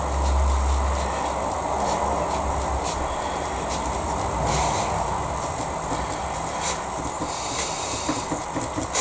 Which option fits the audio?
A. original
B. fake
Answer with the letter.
A